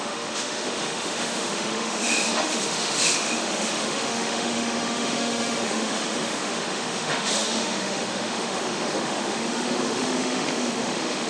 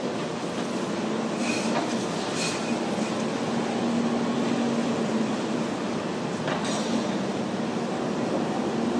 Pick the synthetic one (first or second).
first